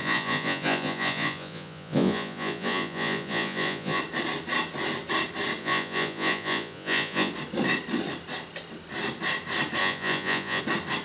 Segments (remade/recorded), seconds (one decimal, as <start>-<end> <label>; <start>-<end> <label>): 0.0-4.0 remade; 4.0-5.6 recorded; 5.6-7.3 remade; 7.3-9.8 recorded; 9.8-10.6 remade; 10.6-11.0 recorded